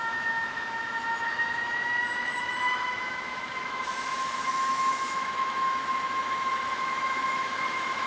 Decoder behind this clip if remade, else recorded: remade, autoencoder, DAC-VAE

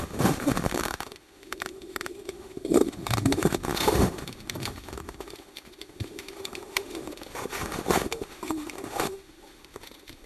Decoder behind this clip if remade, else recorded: remade, autoencoder, DAC-VAE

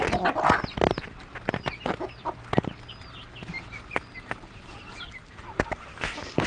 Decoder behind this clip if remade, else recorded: recorded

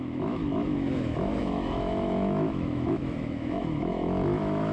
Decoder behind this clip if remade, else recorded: remade, autoencoder, DAC-VAE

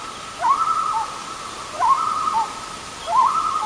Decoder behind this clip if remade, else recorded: recorded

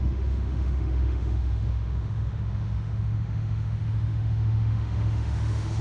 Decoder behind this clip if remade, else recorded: remade, autoencoder, DAC-VAE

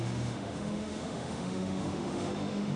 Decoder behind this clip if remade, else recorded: remade, autoencoder, DAC-VAE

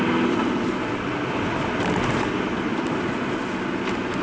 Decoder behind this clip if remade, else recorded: recorded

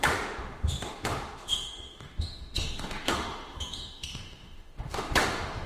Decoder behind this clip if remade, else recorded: remade, autoencoder, DAC-VAE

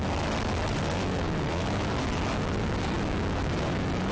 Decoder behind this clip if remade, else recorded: remade, autoencoder, DAC-VAE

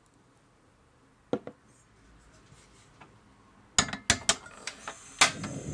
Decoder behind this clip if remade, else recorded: recorded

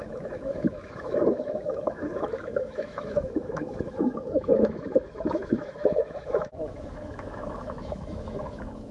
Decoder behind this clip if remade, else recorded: remade, autoencoder, DAC-VAE